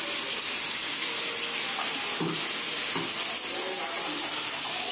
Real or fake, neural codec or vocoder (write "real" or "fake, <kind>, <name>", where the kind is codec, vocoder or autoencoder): real